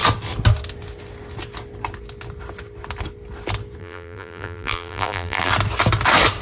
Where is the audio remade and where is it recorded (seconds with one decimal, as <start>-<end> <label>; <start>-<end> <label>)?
0.0-3.8 recorded; 3.8-5.5 remade; 5.5-6.4 recorded